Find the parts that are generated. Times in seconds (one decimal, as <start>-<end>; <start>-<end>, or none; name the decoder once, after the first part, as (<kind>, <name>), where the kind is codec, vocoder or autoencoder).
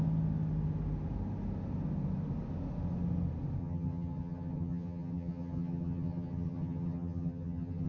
3.6-7.9 (vocoder, HiFi-GAN)